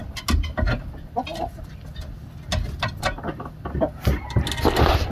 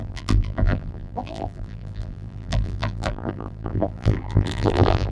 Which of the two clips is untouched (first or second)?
first